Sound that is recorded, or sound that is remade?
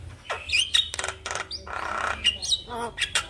recorded